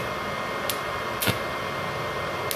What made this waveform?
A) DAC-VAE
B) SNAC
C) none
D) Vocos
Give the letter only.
C